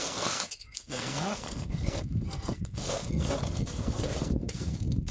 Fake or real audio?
fake